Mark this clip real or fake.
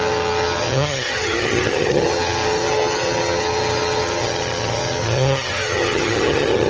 fake